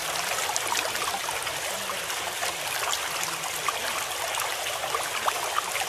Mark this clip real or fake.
real